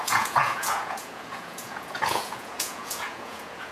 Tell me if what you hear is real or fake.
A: fake